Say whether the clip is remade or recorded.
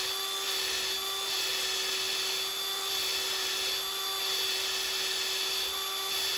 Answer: recorded